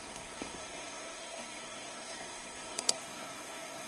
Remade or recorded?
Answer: remade